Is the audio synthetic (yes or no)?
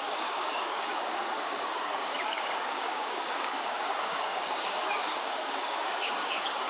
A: yes